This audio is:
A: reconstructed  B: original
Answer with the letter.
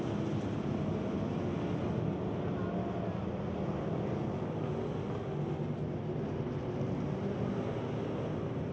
B